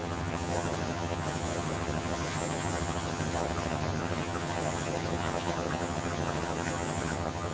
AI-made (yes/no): yes